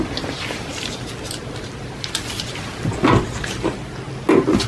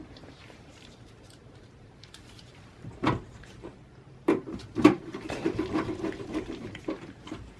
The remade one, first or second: second